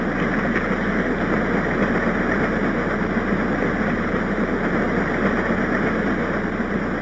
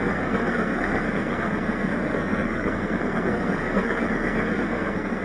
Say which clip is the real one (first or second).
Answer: first